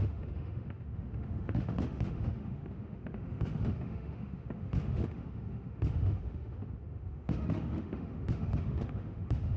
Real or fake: fake